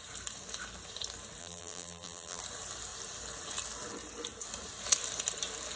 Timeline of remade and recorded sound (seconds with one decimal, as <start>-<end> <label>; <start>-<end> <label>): 0.0-1.4 recorded; 1.4-2.4 remade; 2.4-5.8 recorded